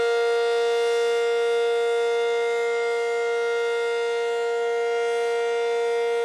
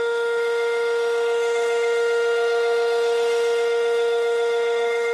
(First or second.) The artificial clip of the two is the second